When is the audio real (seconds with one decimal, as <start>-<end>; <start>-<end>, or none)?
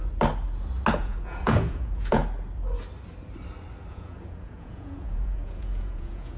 0.0-0.9; 2.2-3.9